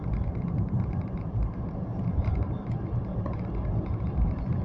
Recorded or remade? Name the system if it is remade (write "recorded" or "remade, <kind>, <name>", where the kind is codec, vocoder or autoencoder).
remade, vocoder, BigVGAN v2